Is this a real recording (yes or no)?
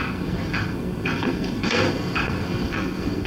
no